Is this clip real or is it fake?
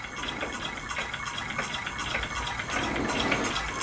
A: real